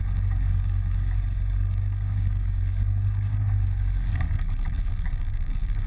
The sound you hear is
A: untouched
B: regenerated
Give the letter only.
B